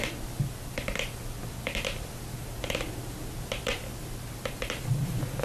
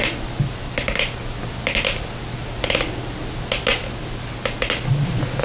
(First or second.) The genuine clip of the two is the second